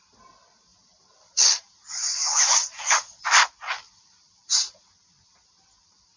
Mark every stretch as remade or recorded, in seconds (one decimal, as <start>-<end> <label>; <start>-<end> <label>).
0.0-0.7 recorded; 0.7-4.4 remade; 4.4-6.2 recorded